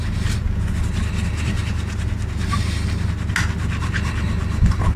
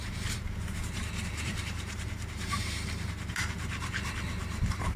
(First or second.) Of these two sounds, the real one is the first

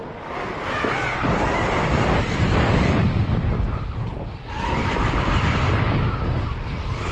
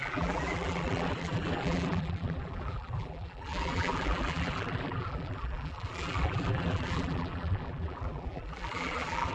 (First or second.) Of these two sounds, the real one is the first